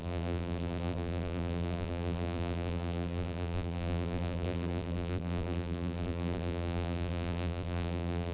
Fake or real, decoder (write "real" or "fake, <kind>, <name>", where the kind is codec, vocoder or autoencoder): fake, vocoder, BigVGAN v2